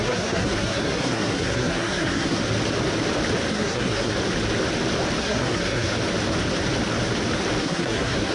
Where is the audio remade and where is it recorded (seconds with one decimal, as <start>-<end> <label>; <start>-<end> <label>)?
0.0-2.4 remade; 2.4-3.5 recorded; 3.5-4.1 remade; 4.1-5.2 recorded; 5.2-5.9 remade; 5.9-7.6 recorded; 7.6-8.3 remade

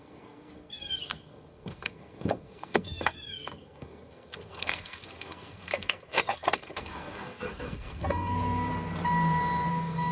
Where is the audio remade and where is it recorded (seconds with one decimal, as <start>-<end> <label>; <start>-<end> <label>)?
0.0-8.7 remade; 8.7-9.7 recorded; 9.7-10.1 remade